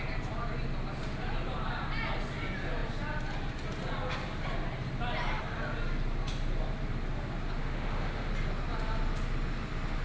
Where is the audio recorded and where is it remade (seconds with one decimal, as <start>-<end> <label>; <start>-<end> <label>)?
0.0-7.6 recorded; 7.6-8.3 remade; 8.3-10.0 recorded

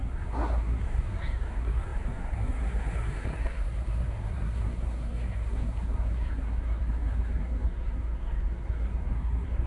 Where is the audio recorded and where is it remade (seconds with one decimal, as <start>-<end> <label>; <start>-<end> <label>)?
0.0-9.7 remade

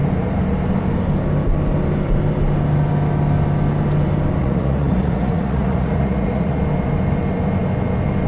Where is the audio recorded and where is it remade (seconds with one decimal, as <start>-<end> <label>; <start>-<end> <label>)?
0.0-4.4 recorded; 4.4-6.6 remade; 6.6-8.3 recorded

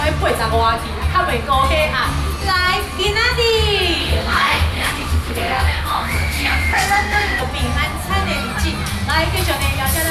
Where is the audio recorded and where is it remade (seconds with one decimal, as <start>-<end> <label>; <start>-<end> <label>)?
0.0-4.0 recorded; 4.0-7.4 remade; 7.4-10.1 recorded

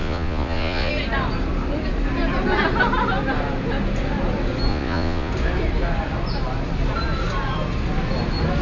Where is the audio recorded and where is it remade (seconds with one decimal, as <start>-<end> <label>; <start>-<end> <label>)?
0.0-0.9 remade; 0.9-4.7 recorded; 4.7-5.3 remade; 5.3-8.6 recorded

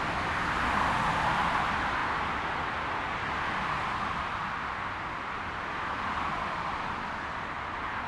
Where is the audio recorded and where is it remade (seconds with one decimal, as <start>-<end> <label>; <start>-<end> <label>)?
0.0-8.1 recorded

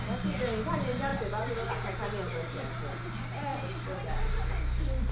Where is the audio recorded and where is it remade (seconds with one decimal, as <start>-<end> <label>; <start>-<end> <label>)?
0.0-5.1 recorded